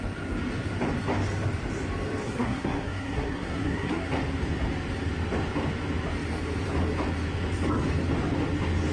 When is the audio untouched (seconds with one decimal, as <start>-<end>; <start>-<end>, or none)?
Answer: 0.0-2.2; 4.1-8.9